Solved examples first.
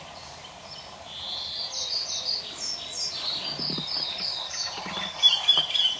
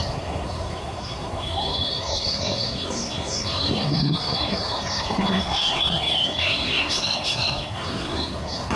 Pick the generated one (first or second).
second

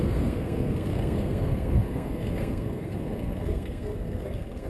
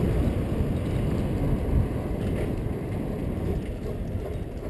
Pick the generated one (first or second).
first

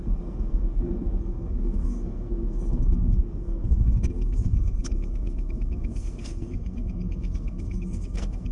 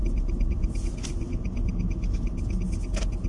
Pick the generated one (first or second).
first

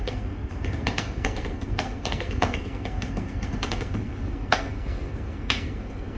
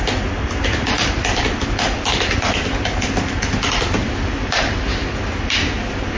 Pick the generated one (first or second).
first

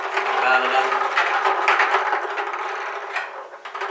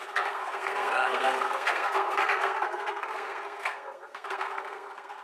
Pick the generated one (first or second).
second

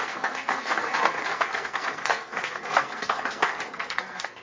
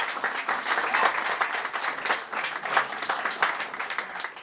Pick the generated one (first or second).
first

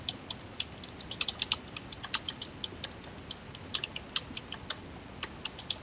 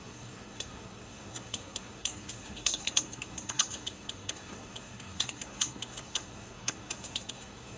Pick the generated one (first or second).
second